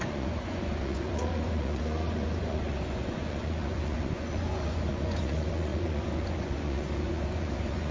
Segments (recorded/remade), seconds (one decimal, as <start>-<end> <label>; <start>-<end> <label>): 0.0-7.9 remade